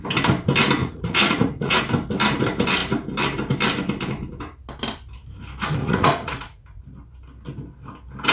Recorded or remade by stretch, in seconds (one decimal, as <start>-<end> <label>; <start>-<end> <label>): 0.0-0.8 recorded; 0.8-1.8 remade; 1.8-5.8 recorded; 5.8-6.8 remade; 6.8-8.3 recorded